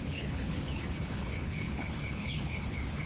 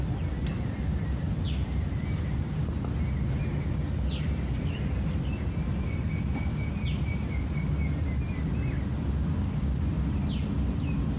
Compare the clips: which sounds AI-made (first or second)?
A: first